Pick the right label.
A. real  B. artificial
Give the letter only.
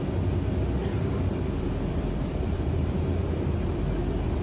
B